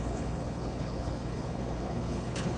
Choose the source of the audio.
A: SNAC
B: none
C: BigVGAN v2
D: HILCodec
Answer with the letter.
D